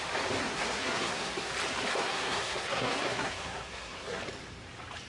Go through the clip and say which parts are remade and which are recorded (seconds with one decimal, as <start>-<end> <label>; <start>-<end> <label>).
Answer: 0.0-0.4 recorded; 0.4-1.5 remade; 1.5-2.0 recorded; 2.0-4.2 remade; 4.2-5.1 recorded